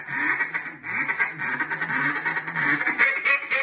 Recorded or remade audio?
recorded